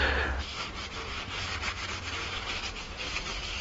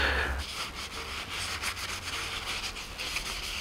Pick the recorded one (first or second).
second